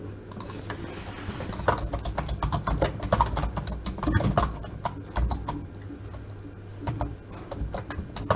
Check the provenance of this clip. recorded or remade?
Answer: recorded